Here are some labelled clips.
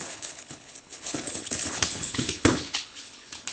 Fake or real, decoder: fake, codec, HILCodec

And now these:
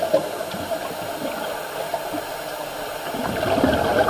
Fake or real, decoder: real